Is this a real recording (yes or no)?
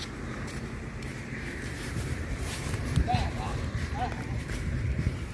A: no